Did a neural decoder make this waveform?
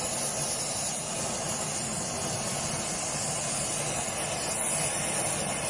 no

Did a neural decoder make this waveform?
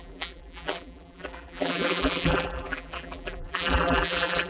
yes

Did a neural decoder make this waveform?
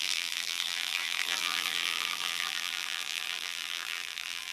yes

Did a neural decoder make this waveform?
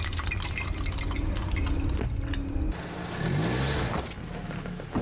no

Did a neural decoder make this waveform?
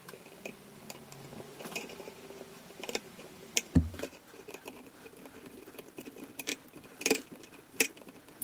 yes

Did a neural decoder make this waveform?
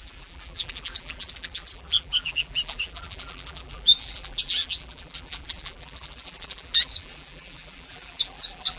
yes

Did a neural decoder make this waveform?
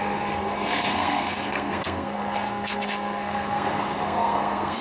yes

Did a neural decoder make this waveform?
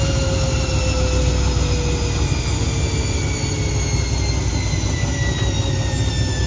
no